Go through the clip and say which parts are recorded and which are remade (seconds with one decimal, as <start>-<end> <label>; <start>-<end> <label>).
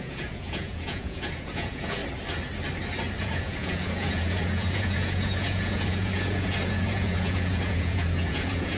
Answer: 0.0-2.0 remade; 2.0-3.2 recorded; 3.2-8.8 remade